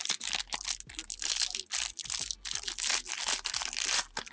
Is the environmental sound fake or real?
real